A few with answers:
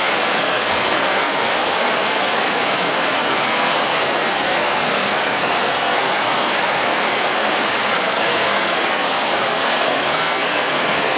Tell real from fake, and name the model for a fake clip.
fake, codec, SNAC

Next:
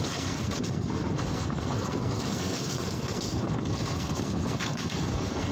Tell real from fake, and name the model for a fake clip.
fake, codec, SNAC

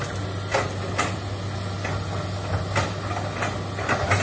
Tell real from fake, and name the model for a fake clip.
real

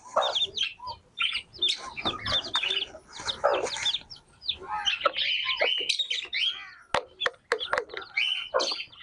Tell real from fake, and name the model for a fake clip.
real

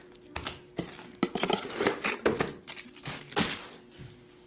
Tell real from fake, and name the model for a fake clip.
real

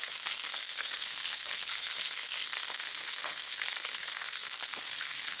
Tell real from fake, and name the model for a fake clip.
fake, codec, SNAC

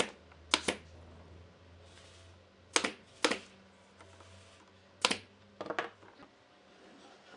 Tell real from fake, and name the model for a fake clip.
real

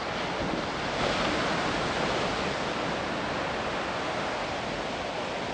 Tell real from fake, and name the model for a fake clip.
real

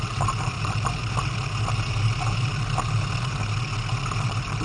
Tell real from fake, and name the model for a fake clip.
real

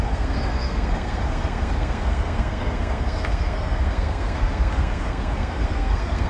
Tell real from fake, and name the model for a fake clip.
fake, codec, SNAC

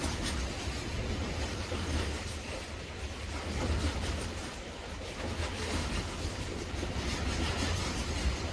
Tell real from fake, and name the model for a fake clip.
real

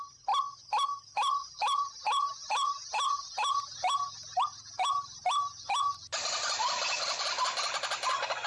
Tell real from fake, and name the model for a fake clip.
real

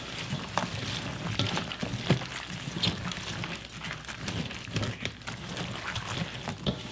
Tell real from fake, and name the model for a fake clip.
real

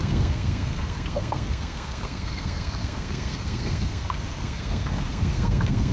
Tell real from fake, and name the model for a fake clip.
fake, codec, SNAC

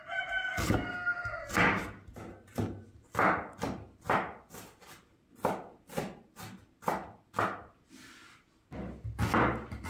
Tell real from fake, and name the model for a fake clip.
real